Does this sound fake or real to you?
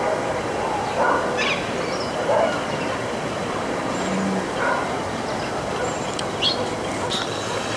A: real